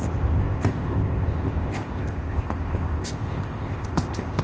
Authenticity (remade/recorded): remade